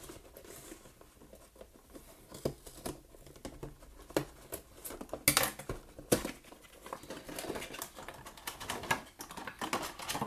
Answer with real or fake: real